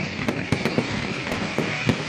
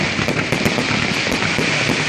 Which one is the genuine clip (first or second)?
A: second